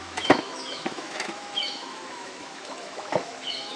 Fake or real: fake